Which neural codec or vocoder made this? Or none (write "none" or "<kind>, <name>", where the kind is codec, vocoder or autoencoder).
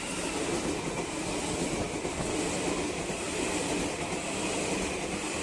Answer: none